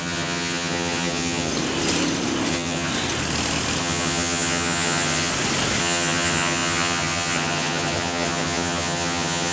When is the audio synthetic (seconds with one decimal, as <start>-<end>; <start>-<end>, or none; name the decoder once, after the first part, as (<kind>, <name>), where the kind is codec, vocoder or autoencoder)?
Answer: 0.0-1.5 (vocoder, HiFi-GAN); 2.5-2.9; 3.8-5.3; 5.8-9.5